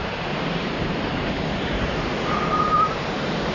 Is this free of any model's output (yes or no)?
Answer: no